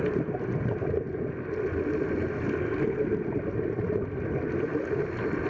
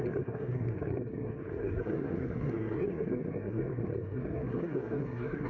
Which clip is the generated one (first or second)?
second